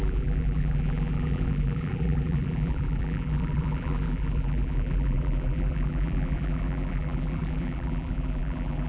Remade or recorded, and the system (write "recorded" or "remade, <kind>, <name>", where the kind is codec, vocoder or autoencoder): remade, vocoder, BigVGAN v2